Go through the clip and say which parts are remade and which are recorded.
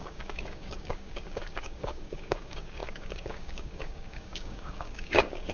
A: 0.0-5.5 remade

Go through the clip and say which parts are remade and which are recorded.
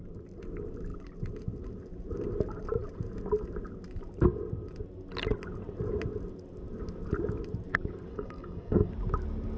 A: 0.0-8.1 recorded; 8.1-8.9 remade; 8.9-9.6 recorded